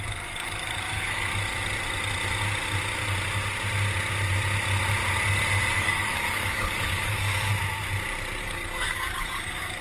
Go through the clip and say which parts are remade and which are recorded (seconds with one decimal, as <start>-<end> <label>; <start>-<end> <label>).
0.0-1.3 remade; 1.3-5.7 recorded; 5.7-7.5 remade; 7.5-8.4 recorded; 8.4-9.8 remade